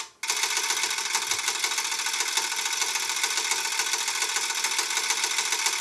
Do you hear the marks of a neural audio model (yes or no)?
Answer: no